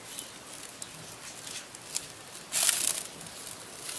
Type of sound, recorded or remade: recorded